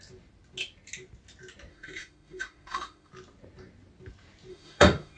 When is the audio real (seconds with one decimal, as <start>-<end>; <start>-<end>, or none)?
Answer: 0.0-1.7; 3.1-4.5